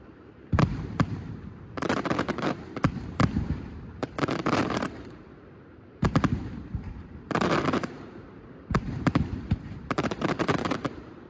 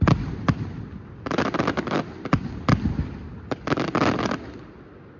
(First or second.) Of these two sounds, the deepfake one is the first